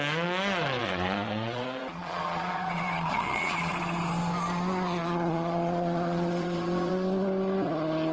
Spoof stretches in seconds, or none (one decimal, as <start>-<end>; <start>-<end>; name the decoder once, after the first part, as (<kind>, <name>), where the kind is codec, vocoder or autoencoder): 0.8-3.7 (vocoder, Vocos); 5.0-6.9